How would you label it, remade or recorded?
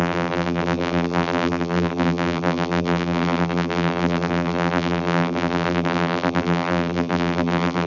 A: remade